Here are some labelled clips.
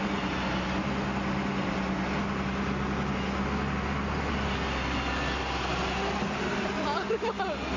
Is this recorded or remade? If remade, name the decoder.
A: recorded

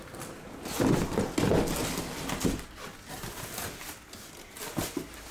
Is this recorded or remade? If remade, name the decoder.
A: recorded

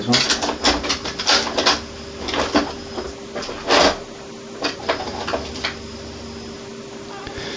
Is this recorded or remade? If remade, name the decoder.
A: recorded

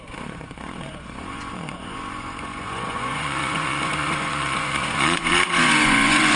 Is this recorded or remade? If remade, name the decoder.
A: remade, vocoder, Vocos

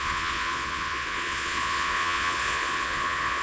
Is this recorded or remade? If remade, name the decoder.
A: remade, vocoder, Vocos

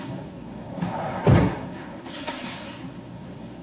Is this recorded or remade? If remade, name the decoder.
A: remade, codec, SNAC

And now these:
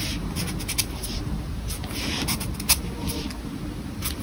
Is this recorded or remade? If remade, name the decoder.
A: recorded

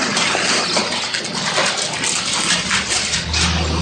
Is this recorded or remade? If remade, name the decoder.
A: recorded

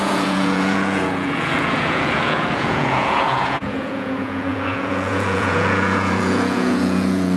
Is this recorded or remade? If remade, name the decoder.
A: remade, vocoder, Vocos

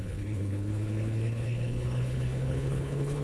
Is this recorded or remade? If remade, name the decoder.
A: remade, codec, HILCodec